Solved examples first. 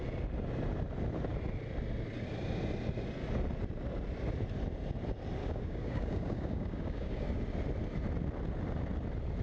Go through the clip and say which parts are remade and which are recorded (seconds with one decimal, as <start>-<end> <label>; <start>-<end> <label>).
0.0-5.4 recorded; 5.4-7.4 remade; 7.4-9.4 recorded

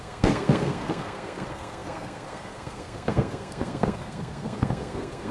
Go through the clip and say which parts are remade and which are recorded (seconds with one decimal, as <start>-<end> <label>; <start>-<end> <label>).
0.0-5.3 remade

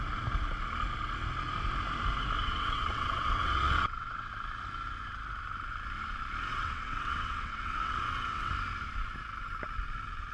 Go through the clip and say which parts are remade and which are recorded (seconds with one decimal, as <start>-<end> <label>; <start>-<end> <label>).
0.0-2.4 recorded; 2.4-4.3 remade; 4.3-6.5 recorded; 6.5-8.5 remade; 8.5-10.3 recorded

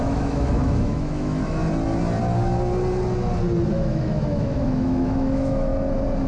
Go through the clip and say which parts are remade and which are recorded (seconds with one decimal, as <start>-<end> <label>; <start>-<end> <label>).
0.0-1.6 remade; 1.6-3.7 recorded; 3.7-5.7 remade; 5.7-6.3 recorded